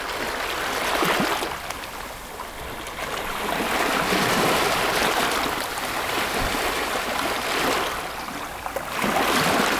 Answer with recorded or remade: recorded